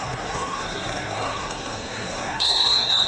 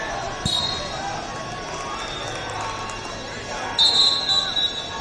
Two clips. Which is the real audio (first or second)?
second